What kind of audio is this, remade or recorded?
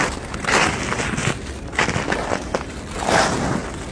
recorded